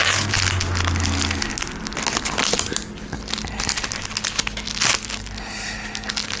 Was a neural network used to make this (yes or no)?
no